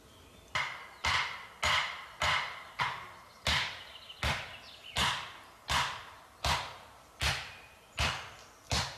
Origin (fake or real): real